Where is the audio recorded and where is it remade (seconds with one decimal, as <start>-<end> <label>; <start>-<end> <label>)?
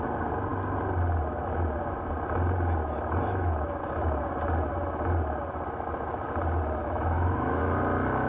0.0-2.8 recorded; 2.8-3.8 remade; 3.8-6.8 recorded; 6.8-7.6 remade; 7.6-8.3 recorded